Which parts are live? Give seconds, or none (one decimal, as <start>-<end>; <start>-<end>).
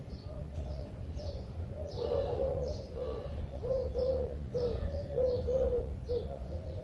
none